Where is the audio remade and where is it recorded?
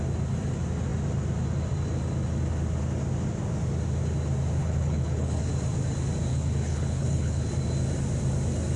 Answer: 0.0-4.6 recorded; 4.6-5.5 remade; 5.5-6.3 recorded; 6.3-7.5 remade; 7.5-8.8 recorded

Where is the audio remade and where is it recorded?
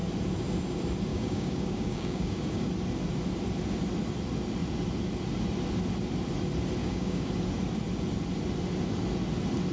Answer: 0.0-1.1 recorded; 1.1-2.7 remade; 2.7-6.8 recorded; 6.8-7.3 remade; 7.3-9.7 recorded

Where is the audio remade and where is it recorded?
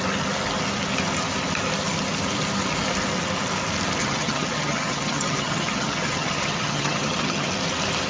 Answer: 0.0-4.0 recorded; 4.0-7.5 remade; 7.5-8.1 recorded